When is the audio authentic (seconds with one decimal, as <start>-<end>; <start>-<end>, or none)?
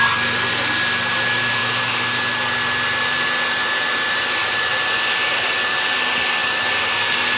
0.0-7.4